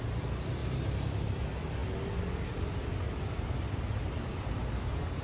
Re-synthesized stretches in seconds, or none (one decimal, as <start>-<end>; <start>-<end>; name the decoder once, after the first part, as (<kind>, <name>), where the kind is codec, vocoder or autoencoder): none